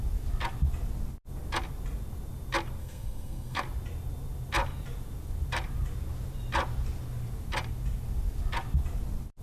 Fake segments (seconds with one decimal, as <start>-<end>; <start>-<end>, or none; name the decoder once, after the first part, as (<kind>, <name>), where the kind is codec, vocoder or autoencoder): 2.8-3.6 (codec, SNAC)